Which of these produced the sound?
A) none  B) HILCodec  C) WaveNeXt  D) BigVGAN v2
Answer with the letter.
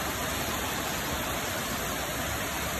A